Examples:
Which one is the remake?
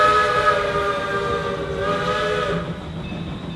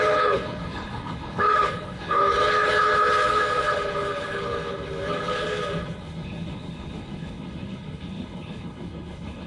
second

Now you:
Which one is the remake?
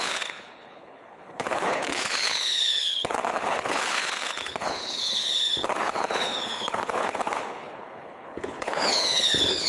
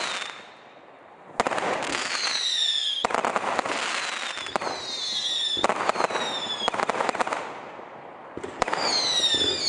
first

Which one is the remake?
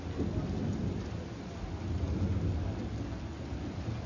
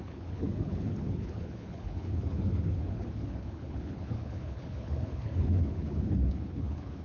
second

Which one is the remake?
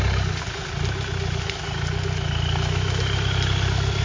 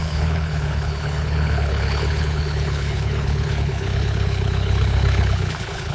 second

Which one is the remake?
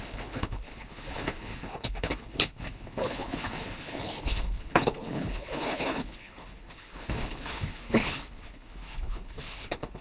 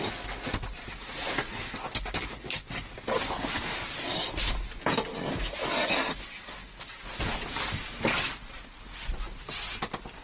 first